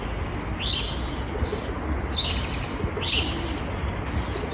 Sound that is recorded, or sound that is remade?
recorded